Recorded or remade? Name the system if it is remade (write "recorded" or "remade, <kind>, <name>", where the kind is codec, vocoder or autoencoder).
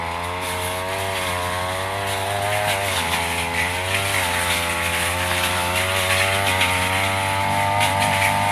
recorded